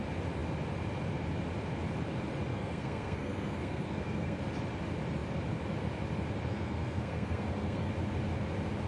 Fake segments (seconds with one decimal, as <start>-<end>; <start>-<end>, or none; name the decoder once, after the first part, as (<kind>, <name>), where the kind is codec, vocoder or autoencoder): 2.5-4.4 (codec, SNAC); 6.5-7.9